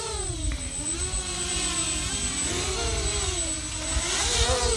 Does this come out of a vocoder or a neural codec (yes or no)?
no